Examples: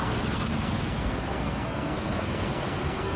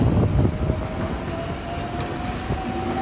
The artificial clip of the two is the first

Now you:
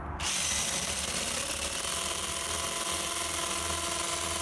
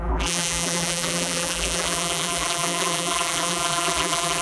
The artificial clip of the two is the second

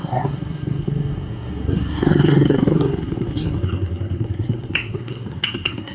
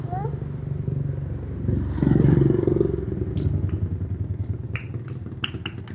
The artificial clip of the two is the first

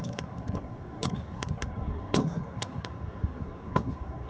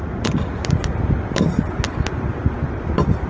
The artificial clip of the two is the first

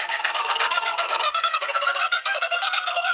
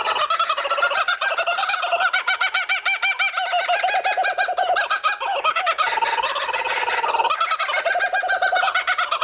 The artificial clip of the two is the first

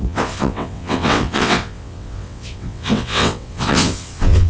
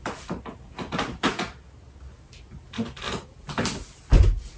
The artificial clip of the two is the first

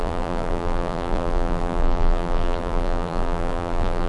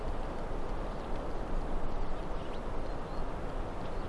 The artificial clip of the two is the first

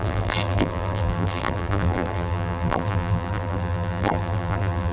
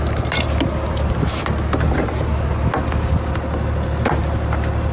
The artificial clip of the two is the first